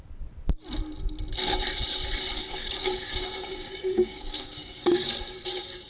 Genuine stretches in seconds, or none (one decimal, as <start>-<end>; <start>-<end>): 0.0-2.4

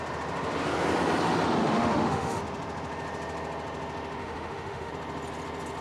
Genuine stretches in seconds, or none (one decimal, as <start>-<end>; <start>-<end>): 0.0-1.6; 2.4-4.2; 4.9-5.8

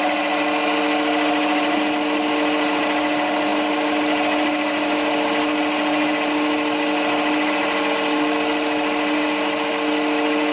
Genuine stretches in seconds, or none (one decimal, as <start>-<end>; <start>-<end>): 0.0-10.5

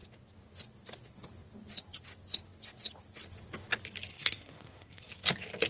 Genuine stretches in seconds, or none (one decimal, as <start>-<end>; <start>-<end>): 0.0-4.1; 5.1-5.7

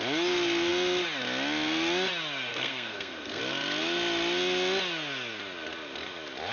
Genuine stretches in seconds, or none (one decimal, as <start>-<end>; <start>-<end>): 0.0-2.5; 3.4-6.5